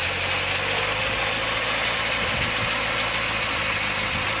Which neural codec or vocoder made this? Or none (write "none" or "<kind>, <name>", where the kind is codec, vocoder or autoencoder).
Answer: none